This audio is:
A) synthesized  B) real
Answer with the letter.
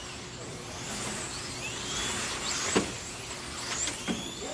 B